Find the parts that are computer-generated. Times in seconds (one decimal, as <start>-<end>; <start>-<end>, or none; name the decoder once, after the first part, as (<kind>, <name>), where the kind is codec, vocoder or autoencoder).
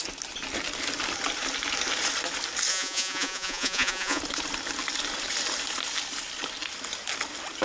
2.7-4.2 (vocoder, Vocos)